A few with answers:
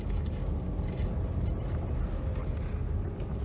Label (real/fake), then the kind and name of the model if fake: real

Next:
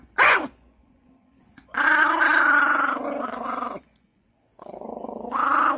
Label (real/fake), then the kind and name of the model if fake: fake, vocoder, Vocos